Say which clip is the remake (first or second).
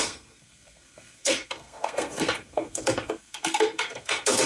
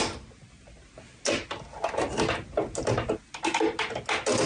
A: first